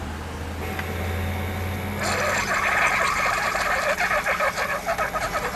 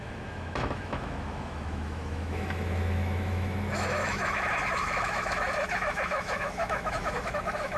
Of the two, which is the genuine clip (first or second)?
first